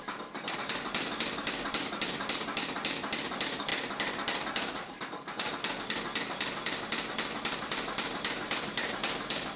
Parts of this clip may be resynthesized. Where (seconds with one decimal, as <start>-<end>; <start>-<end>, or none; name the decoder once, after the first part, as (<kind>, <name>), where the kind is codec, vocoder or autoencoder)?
0.0-5.5 (vocoder, BigVGAN v2); 6.2-9.6